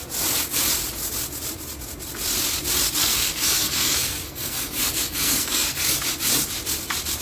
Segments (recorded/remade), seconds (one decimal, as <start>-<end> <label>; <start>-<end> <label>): 0.0-3.0 recorded; 3.0-6.0 remade; 6.0-7.2 recorded